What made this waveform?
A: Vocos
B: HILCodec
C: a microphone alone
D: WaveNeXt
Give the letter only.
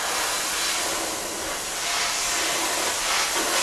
C